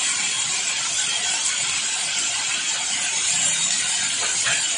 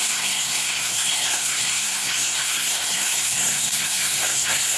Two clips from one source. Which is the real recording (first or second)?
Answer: first